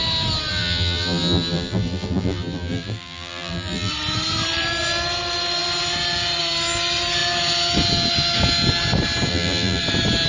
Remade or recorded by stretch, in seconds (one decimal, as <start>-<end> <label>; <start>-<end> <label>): 0.0-0.5 recorded; 0.5-3.9 remade; 3.9-9.3 recorded; 9.3-9.8 remade; 9.8-10.3 recorded